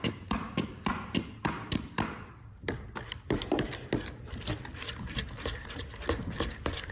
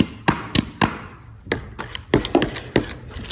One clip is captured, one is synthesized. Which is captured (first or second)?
second